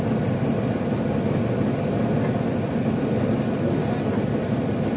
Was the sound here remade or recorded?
recorded